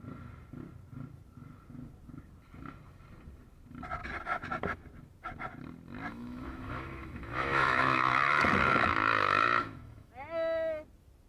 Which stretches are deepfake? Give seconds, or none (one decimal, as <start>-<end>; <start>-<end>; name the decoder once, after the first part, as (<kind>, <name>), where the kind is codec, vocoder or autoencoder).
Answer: 6.1-10.1 (autoencoder, DAC-VAE)

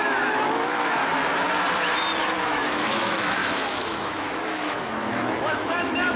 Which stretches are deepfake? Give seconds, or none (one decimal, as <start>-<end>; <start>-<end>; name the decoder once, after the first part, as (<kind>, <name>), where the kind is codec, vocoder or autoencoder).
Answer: 0.0-1.0 (autoencoder, DAC-VAE); 2.2-6.2

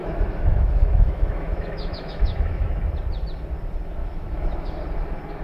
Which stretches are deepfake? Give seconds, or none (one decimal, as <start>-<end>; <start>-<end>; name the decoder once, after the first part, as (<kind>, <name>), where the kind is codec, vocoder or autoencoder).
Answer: 0.0-2.7 (autoencoder, DAC-VAE); 4.0-4.8

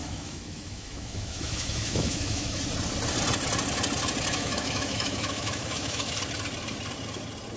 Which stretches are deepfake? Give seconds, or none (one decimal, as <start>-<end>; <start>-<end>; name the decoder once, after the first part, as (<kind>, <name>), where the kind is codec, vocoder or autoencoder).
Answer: 0.0-2.6 (autoencoder, DAC-VAE); 4.3-6.2

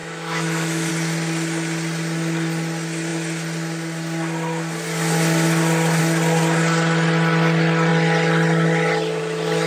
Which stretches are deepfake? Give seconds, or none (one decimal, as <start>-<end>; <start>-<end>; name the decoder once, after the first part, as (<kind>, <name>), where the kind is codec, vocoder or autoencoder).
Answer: 0.0-0.9 (autoencoder, DAC-VAE)

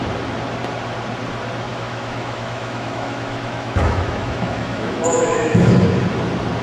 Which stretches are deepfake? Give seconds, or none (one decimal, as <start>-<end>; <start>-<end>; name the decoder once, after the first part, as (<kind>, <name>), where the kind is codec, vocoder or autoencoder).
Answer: 1.7-5.7 (autoencoder, DAC-VAE)

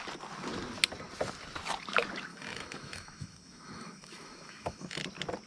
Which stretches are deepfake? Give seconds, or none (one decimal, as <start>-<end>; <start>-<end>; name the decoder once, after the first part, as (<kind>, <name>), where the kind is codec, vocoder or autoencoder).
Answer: 2.3-5.0 (autoencoder, DAC-VAE)

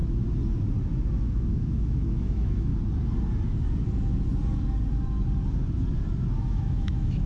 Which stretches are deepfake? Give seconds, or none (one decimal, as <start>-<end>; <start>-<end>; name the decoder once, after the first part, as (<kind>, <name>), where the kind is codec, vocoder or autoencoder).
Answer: 1.3-2.7 (autoencoder, DAC-VAE); 6.4-7.3